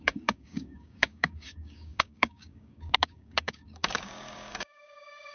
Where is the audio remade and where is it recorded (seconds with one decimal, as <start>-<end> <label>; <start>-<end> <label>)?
0.0-5.3 remade